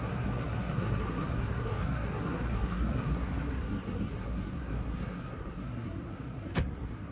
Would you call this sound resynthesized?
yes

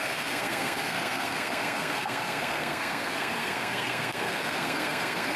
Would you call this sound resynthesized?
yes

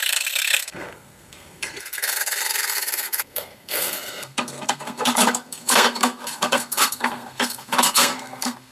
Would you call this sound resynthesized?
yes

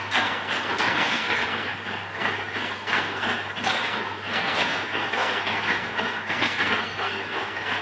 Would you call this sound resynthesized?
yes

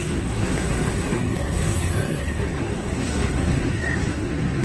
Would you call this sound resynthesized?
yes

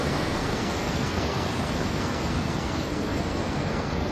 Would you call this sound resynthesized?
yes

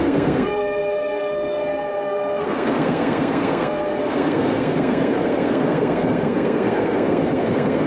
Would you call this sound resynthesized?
yes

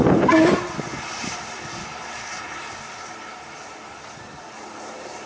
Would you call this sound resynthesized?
no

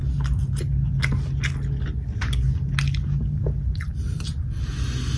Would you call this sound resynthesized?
no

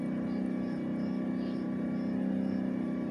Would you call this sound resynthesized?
no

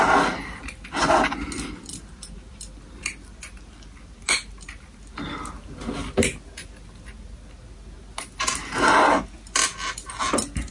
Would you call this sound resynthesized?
no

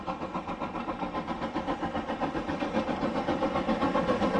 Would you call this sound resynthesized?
no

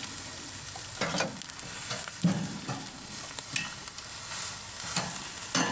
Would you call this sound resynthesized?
no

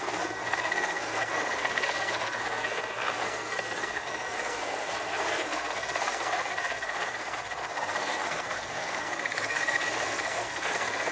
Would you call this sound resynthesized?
yes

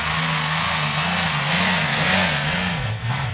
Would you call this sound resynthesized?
yes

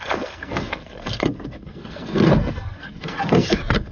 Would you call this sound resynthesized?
yes